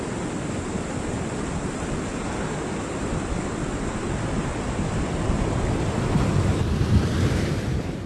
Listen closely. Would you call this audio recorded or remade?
recorded